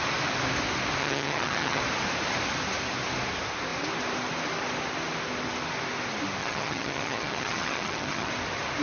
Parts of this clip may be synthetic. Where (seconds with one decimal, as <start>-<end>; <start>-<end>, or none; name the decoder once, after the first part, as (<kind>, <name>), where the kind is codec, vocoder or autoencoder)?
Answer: 1.0-1.8 (vocoder, HiFi-GAN); 6.4-8.3

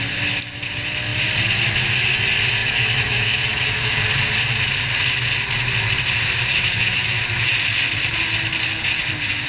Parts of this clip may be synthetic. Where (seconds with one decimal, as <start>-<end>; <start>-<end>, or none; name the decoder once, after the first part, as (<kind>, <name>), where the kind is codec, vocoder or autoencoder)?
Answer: 2.6-4.0 (autoencoder, DAC-VAE); 6.5-7.5

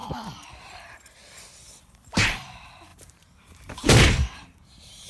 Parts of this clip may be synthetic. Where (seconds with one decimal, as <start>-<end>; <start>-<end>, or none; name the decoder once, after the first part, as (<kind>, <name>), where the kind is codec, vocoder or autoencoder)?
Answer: 2.9-5.1 (vocoder, BigVGAN v2)

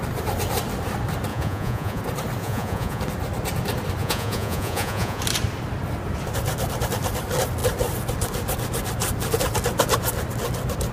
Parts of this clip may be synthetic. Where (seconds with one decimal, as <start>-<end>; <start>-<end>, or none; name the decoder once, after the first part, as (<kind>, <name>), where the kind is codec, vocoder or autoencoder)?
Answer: 1.3-2.0 (vocoder, Vocos); 2.4-3.0; 4.0-5.2

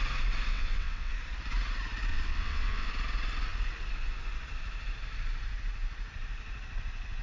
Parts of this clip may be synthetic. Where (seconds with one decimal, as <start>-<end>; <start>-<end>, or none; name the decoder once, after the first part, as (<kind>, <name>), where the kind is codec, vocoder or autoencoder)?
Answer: 0.5-1.1 (vocoder, WaveNeXt); 2.1-2.9